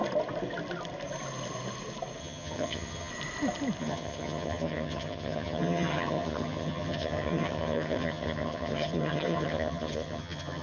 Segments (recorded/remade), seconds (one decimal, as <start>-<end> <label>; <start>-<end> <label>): 0.0-2.2 recorded; 2.2-3.1 remade; 3.1-3.8 recorded; 3.8-10.6 remade